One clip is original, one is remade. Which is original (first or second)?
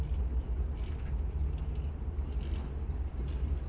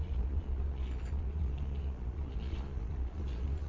first